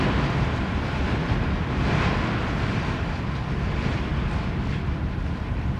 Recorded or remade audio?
recorded